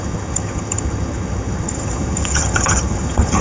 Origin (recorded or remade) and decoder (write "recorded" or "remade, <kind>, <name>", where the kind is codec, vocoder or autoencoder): remade, vocoder, HiFi-GAN